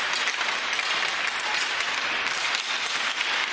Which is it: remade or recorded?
recorded